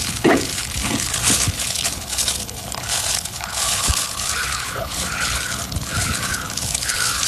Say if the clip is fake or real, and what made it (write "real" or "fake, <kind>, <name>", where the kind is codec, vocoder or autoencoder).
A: fake, codec, HILCodec